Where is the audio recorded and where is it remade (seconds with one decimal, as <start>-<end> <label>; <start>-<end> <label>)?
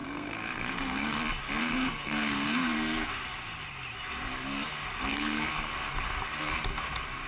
0.0-1.2 remade; 1.2-1.6 recorded; 1.6-3.1 remade; 3.1-5.1 recorded; 5.1-5.7 remade; 5.7-7.3 recorded